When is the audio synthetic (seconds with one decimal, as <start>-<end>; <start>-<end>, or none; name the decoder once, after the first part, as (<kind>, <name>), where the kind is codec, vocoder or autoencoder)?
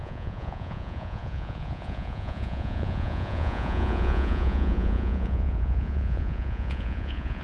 0.0-7.4 (vocoder, Vocos)